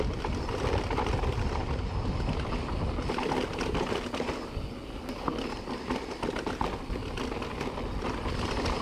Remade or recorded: recorded